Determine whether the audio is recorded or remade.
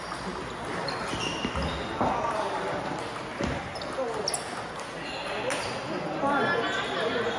recorded